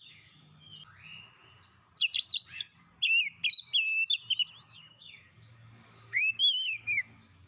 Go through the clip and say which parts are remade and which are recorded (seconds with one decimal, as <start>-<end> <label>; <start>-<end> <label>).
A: 0.0-0.7 remade; 0.7-4.6 recorded; 4.6-7.5 remade